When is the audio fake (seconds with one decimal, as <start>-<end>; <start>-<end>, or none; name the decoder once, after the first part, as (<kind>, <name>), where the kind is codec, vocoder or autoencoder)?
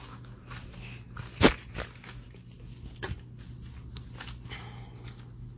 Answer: none